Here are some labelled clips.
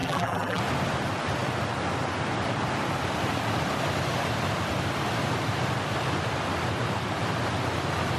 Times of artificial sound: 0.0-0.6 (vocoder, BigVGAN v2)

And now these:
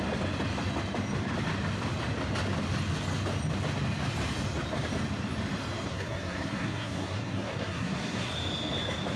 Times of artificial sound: 5.9-8.3 (codec, SNAC)

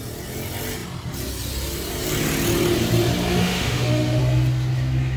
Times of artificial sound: 3.4-4.2 (autoencoder, DAC-VAE)

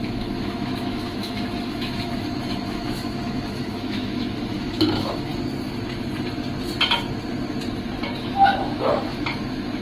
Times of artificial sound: 0.0-5.3 (autoencoder, DAC-VAE); 8.2-9.8